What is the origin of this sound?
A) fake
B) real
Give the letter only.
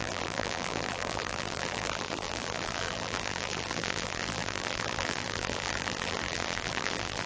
A